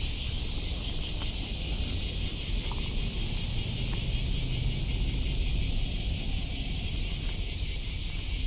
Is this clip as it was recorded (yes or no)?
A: yes